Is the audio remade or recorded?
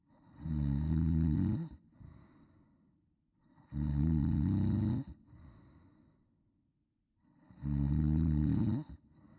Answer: recorded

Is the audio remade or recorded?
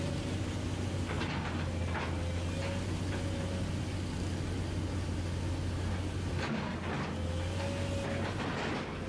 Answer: recorded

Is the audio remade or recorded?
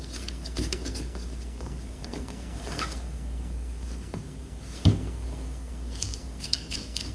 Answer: remade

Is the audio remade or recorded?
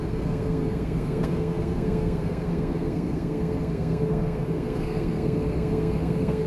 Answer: remade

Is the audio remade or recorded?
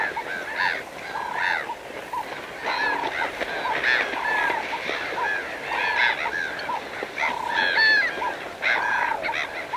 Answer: recorded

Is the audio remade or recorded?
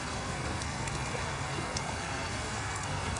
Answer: remade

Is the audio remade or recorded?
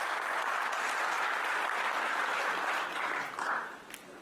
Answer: recorded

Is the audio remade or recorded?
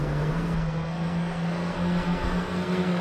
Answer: remade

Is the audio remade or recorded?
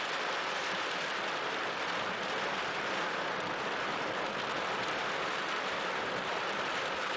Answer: recorded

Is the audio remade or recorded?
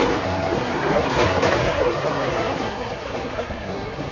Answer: remade